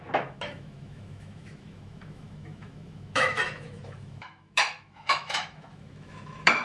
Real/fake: fake